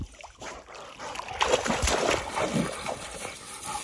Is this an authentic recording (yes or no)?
yes